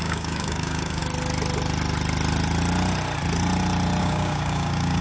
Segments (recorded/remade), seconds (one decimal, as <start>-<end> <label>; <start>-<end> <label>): 0.0-1.0 remade; 1.0-4.0 recorded; 4.0-5.0 remade